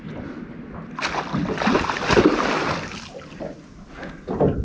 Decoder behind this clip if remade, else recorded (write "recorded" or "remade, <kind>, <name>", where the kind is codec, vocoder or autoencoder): recorded